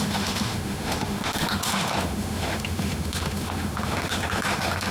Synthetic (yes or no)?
yes